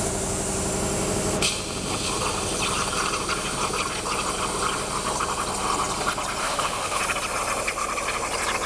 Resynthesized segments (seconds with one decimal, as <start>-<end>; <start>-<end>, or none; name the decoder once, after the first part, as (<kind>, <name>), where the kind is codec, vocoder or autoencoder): 6.4-7.0 (autoencoder, DAC-VAE)